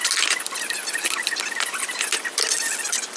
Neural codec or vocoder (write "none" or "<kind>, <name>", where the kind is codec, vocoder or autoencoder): none